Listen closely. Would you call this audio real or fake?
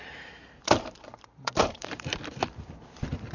fake